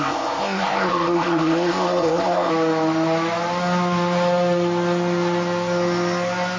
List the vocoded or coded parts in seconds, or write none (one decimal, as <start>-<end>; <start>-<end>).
0.0-2.5